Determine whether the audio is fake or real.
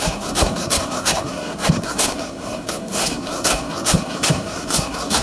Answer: fake